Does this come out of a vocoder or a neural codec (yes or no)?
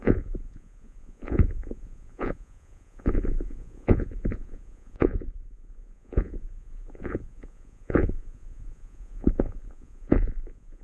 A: yes